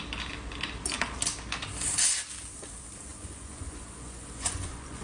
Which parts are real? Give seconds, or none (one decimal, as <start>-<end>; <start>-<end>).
0.0-3.1